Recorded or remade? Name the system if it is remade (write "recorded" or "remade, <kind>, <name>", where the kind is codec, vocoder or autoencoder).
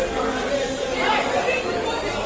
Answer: recorded